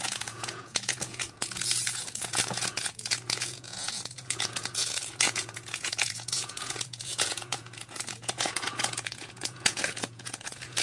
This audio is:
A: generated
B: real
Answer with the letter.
A